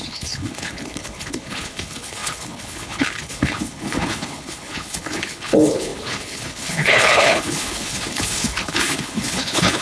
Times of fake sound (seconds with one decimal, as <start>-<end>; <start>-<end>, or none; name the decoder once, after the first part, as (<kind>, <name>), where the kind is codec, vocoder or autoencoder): 0.0-9.8 (codec, HILCodec)